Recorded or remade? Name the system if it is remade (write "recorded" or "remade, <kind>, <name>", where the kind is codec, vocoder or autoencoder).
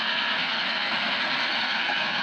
remade, codec, SNAC